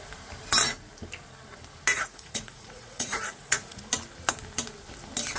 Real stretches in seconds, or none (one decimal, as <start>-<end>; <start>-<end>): 0.0-1.9; 3.8-5.4